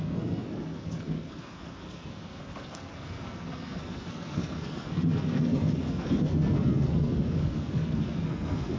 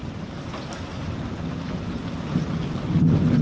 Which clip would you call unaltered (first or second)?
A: second